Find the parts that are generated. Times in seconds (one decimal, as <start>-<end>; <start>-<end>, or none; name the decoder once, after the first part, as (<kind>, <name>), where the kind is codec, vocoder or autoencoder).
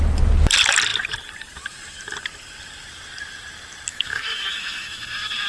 3.9-5.5 (autoencoder, DAC-VAE)